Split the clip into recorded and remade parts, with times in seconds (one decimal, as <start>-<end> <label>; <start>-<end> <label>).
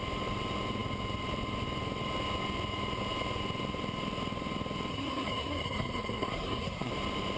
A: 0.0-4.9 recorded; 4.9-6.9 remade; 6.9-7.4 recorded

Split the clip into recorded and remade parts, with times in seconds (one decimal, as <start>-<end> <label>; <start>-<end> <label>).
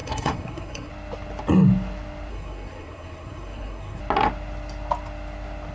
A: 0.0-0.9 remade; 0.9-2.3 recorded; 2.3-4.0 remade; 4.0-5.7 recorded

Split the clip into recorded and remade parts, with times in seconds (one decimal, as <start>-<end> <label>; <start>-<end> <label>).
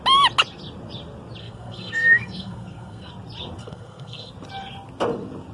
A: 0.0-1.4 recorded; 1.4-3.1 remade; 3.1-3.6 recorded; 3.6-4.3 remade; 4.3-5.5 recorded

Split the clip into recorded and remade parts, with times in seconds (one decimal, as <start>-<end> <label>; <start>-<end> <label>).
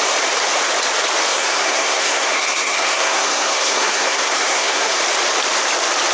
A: 0.0-1.3 recorded; 1.3-5.0 remade; 5.0-6.1 recorded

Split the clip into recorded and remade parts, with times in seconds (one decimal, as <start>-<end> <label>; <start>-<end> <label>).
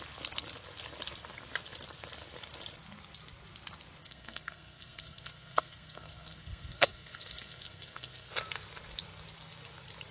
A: 0.0-4.0 recorded; 4.0-8.3 remade; 8.3-10.1 recorded